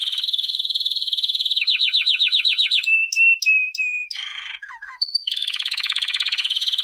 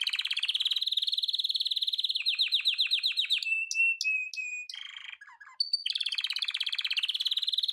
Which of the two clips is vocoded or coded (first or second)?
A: first